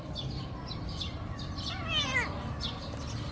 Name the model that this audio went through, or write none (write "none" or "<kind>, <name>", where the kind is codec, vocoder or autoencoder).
none